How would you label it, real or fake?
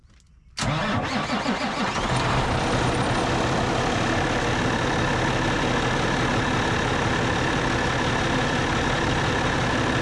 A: real